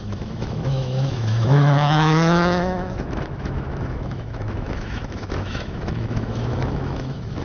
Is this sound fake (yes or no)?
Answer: yes